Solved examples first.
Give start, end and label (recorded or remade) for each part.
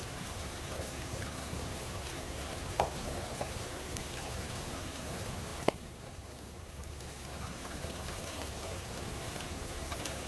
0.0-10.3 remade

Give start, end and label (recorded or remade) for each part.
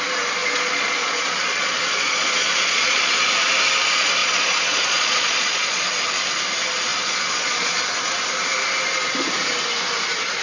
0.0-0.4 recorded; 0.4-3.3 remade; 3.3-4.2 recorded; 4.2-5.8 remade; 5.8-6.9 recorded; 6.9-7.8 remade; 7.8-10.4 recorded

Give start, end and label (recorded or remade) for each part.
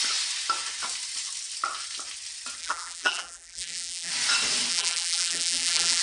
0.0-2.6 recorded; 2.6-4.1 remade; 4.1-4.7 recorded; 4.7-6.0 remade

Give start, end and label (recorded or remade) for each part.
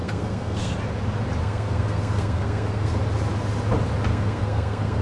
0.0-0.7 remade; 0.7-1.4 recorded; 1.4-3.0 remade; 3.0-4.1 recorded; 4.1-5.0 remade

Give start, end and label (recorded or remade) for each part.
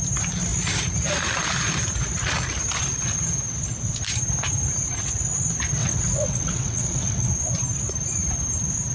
0.0-5.8 recorded; 5.8-7.3 remade; 7.3-8.9 recorded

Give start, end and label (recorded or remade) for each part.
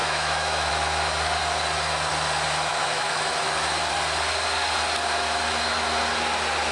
0.0-0.7 remade; 0.7-2.7 recorded; 2.7-3.9 remade; 3.9-6.7 recorded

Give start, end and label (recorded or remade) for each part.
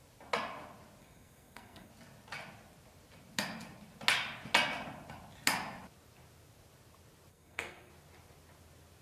0.0-1.0 recorded; 1.0-1.9 remade; 1.9-7.3 recorded; 7.3-7.9 remade; 7.9-9.0 recorded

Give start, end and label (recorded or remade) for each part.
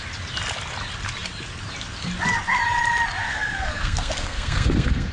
0.0-3.2 recorded; 3.2-5.1 remade